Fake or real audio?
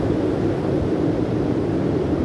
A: real